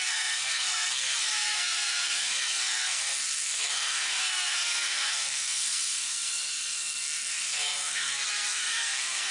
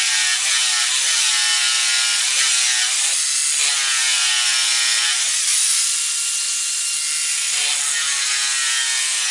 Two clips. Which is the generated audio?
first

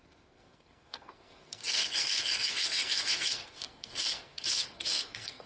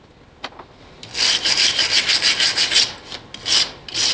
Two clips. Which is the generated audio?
first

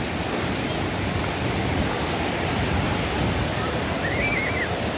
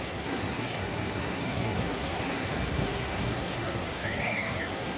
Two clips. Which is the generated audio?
second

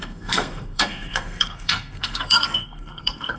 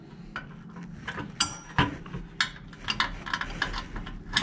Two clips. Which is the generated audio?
first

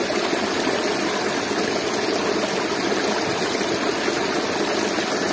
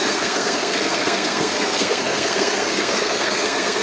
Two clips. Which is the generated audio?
second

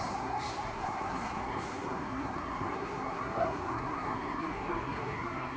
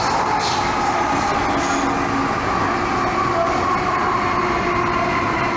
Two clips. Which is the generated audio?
first